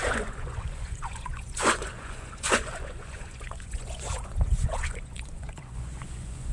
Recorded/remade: remade